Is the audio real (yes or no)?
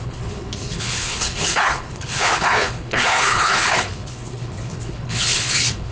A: no